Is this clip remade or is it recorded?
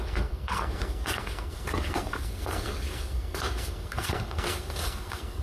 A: remade